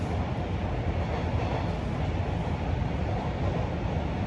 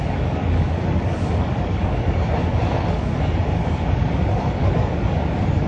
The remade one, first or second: second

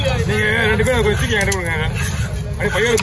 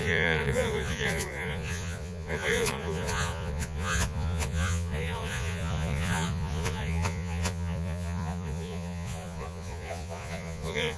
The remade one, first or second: second